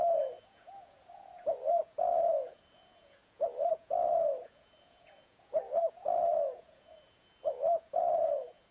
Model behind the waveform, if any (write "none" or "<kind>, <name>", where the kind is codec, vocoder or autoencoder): vocoder, Vocos